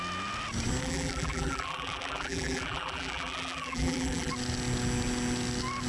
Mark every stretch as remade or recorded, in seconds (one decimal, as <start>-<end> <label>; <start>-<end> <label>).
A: 0.0-0.8 recorded; 0.8-4.3 remade; 4.3-5.9 recorded